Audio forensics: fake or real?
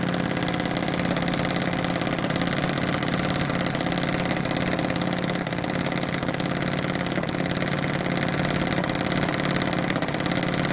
real